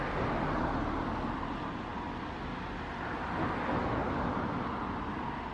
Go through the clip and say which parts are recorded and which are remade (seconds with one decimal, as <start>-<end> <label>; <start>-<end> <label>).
0.0-5.5 recorded